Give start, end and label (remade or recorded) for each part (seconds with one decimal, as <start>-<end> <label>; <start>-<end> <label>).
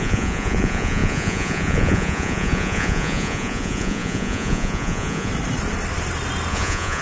0.0-5.3 remade; 5.3-6.5 recorded; 6.5-7.0 remade